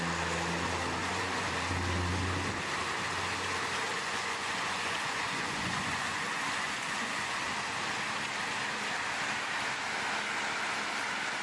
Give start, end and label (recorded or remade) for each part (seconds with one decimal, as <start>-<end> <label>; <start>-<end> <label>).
0.0-1.0 recorded; 1.0-1.5 remade; 1.5-3.9 recorded; 3.9-7.4 remade; 7.4-11.4 recorded